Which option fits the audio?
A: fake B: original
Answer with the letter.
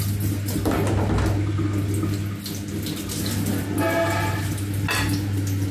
B